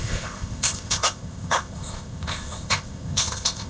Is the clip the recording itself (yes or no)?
no